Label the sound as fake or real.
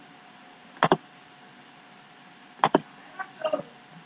real